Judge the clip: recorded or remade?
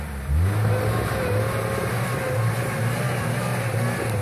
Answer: recorded